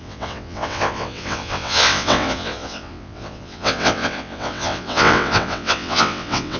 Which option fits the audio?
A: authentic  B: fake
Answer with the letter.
B